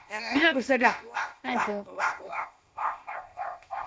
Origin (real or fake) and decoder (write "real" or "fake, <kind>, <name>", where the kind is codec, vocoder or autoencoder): fake, codec, ZipCodec